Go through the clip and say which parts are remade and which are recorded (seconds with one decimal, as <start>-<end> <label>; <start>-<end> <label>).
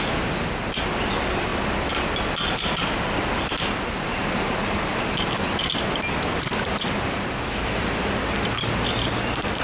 0.0-9.6 recorded